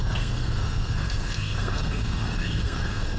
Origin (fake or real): fake